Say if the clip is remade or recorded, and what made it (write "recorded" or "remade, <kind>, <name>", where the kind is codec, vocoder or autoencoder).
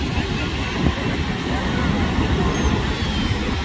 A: recorded